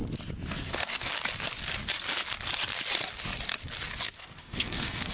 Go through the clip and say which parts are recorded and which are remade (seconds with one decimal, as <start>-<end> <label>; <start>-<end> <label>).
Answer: 0.0-0.6 recorded; 0.6-1.1 remade; 1.1-4.2 recorded; 4.2-5.1 remade